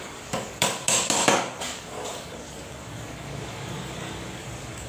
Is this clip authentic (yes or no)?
no